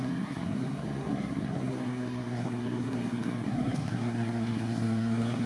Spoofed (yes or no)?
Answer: yes